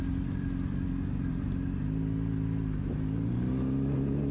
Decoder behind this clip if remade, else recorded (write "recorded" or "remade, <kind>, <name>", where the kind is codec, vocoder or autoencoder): recorded